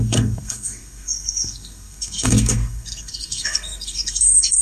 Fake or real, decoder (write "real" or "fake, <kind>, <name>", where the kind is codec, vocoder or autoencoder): fake, codec, SNAC